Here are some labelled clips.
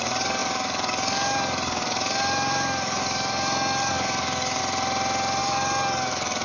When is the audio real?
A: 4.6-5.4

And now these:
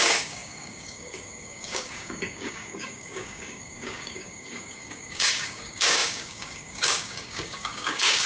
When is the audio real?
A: none

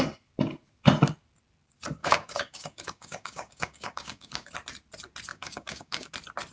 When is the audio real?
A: 0.0-2.0; 4.5-5.3; 6.1-6.5

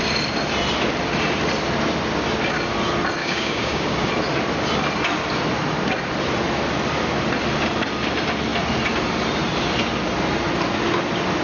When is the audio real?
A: 0.0-3.2; 4.1-11.4

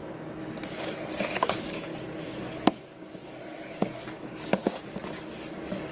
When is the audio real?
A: 0.0-0.7; 1.9-2.4

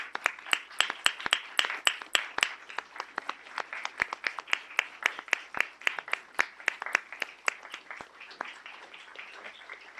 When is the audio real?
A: 0.0-10.0

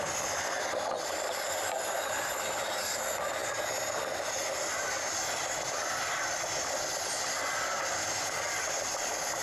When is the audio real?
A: 0.0-9.4